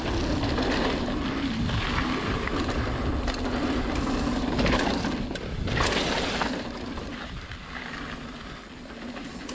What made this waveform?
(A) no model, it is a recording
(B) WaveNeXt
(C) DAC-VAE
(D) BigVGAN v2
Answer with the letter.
A